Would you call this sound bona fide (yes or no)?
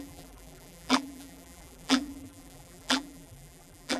no